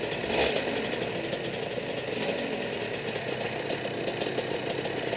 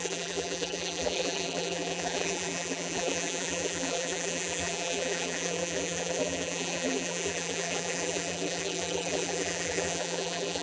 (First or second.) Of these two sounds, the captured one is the first